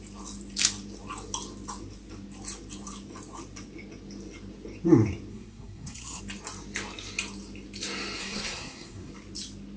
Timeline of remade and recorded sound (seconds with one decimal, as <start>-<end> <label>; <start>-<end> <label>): 0.0-5.3 recorded; 5.3-6.2 remade; 6.2-8.2 recorded; 8.2-9.1 remade; 9.1-9.8 recorded